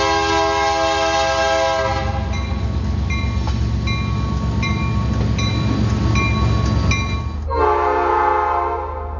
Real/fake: real